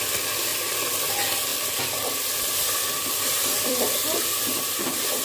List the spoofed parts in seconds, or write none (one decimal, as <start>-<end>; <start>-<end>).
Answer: 0.5-1.1; 1.5-4.6